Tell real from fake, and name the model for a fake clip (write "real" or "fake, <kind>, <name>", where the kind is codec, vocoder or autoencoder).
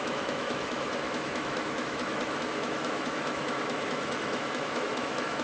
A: fake, autoencoder, DAC-VAE